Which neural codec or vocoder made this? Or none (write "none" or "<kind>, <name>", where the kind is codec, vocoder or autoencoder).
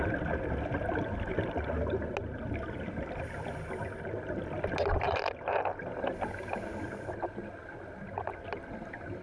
none